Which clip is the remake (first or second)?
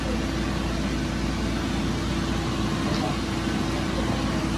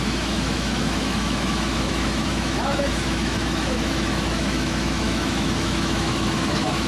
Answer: second